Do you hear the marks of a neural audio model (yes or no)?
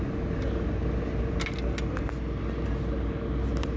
no